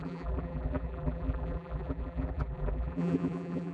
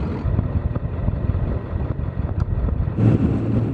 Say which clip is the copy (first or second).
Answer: first